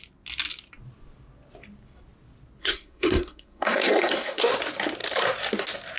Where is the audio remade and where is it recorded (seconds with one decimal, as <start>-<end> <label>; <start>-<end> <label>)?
0.0-2.6 recorded; 2.6-4.5 remade; 4.5-6.0 recorded